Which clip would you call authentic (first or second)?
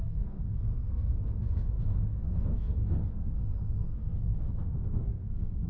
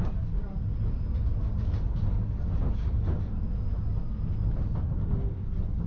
second